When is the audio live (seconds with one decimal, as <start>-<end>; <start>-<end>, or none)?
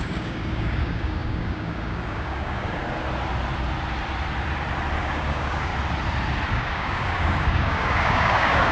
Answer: 2.8-5.0; 5.7-6.5